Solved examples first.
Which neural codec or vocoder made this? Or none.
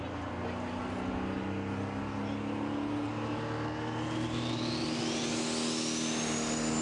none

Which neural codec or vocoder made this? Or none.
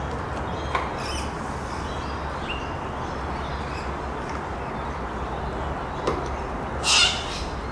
none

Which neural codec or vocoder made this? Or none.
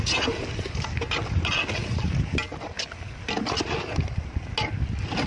none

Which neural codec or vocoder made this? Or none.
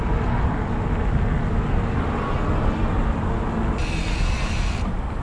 none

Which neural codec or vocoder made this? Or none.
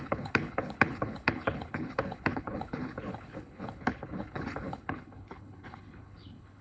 codec, HILCodec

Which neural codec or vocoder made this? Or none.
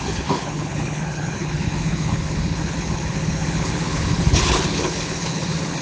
codec, HILCodec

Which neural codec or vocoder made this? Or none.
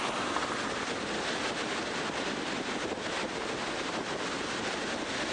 none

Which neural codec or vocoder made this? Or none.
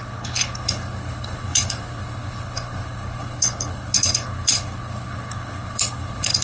codec, HILCodec